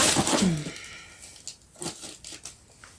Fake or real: real